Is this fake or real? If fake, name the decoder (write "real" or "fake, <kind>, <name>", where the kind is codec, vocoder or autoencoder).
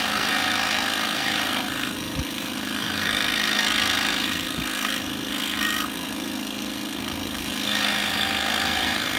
fake, codec, SNAC